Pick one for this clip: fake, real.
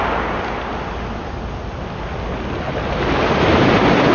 real